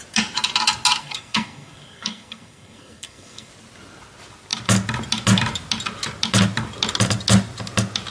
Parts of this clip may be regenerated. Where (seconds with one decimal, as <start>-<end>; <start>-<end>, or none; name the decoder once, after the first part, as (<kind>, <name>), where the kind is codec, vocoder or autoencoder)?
1.0-3.5 (codec, SNAC)